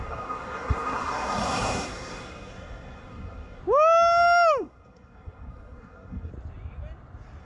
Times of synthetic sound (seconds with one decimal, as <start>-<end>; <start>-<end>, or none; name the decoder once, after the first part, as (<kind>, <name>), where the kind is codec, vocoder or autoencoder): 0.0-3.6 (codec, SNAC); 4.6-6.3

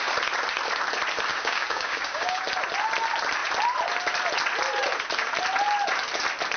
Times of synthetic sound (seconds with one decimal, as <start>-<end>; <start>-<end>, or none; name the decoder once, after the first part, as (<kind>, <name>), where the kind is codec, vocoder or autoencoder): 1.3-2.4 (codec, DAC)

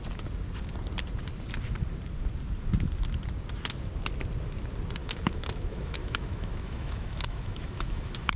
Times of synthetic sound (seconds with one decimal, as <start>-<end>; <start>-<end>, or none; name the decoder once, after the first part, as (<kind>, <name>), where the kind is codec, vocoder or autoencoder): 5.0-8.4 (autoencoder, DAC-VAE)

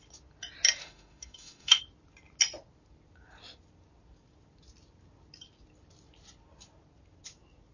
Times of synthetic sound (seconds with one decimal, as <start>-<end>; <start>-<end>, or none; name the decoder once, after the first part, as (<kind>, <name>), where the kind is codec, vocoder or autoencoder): 0.8-1.8 (autoencoder, DAC-VAE)